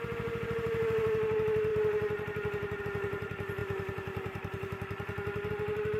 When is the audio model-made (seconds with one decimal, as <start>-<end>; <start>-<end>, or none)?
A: 1.7-2.8